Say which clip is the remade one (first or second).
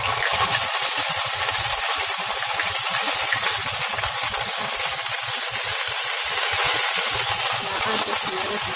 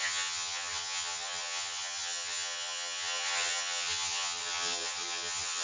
second